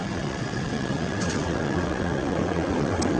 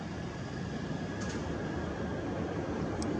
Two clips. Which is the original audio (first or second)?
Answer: second